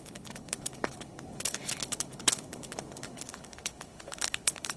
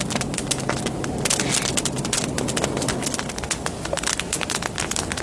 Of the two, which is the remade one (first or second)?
first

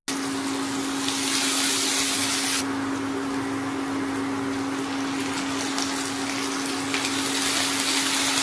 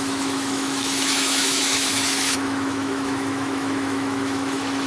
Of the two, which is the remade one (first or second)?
second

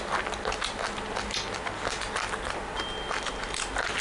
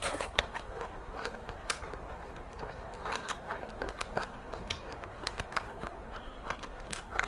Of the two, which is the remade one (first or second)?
second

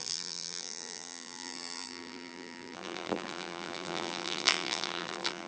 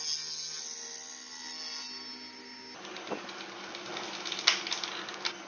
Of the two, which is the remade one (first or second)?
first